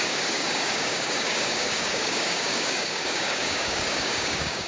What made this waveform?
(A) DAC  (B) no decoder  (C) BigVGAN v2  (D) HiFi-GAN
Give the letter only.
A